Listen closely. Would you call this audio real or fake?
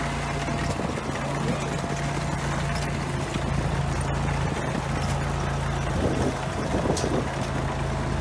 real